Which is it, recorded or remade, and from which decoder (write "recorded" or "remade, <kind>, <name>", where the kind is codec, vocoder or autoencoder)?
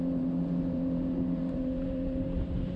remade, vocoder, BigVGAN v2